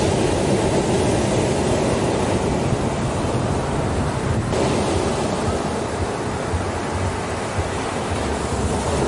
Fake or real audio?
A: real